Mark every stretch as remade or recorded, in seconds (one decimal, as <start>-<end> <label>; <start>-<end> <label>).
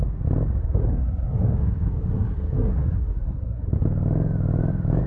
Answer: 0.0-0.6 recorded; 0.6-3.7 remade; 3.7-5.1 recorded